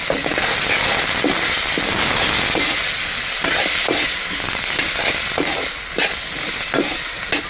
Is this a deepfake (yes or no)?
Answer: no